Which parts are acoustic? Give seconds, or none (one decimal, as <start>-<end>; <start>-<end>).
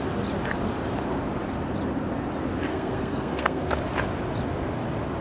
0.0-2.7; 3.8-5.2